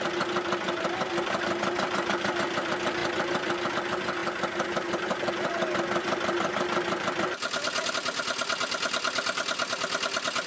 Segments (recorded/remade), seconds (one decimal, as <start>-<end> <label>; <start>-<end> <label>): 0.0-10.5 recorded